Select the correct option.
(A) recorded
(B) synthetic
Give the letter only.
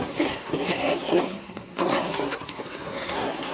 B